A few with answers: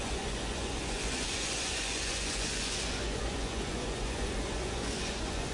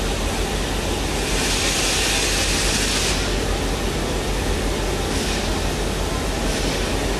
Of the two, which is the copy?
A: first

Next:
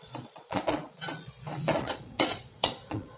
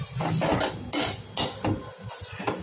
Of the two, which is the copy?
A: first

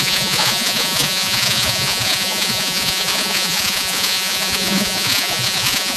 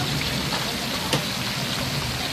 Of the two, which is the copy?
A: first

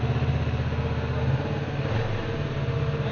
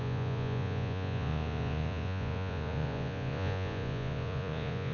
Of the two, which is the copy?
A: second